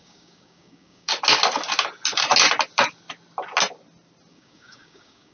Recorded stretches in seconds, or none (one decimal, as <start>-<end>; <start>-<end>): 1.1-4.3